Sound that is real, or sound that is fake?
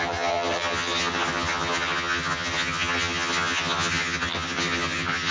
fake